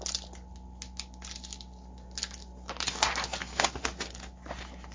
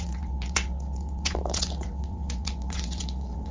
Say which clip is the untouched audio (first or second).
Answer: first